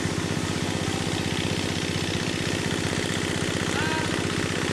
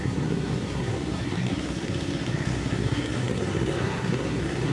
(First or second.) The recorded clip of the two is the first